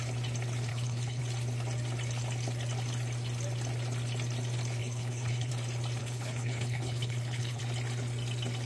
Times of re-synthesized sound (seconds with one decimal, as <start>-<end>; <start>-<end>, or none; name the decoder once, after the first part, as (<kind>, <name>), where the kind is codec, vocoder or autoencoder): 0.7-1.2 (codec, HILCodec); 4.8-5.5; 6.0-7.6

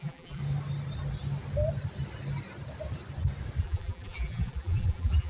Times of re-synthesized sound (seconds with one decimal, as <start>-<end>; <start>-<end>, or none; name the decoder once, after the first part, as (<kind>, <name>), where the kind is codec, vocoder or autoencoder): 0.0-0.4 (vocoder, BigVGAN v2); 3.6-5.3

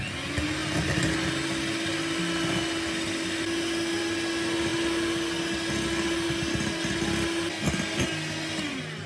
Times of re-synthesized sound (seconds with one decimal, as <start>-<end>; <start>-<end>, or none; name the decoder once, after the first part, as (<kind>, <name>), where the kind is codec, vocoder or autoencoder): none

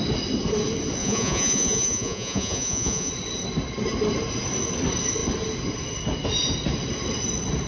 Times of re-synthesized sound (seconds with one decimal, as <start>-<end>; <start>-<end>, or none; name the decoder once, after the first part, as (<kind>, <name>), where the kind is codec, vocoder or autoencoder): 1.0-3.1 (vocoder, Vocos)

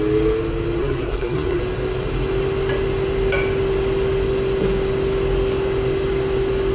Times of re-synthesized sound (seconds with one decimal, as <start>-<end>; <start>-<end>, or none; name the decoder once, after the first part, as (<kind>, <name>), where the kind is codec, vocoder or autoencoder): 0.8-1.6 (codec, SNAC)

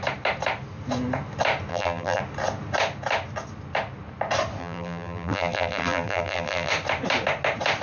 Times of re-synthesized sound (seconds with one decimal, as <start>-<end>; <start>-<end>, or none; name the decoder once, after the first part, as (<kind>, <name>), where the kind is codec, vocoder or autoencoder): 1.7-2.2 (vocoder, BigVGAN v2); 4.6-6.7

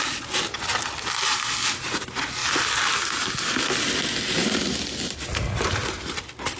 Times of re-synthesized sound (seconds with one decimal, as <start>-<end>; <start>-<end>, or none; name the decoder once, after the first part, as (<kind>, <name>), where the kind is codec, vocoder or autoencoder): none